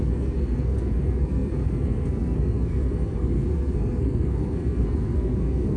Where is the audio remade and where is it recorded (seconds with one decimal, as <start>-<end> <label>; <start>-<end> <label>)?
0.0-5.8 remade